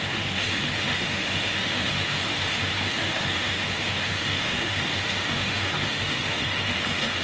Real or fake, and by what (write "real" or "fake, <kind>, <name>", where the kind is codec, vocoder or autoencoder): fake, autoencoder, DAC-VAE